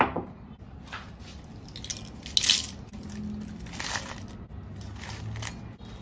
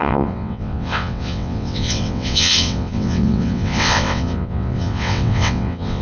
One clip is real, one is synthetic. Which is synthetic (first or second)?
second